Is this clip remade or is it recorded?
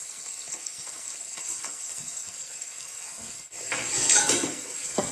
remade